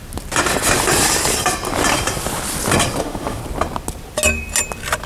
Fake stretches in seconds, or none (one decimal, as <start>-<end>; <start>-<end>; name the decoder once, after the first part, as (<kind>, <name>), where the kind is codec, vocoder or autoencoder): 3.0-3.4 (autoencoder, DAC-VAE)